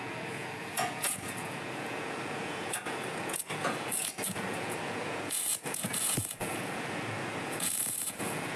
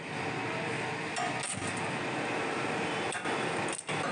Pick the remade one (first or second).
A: first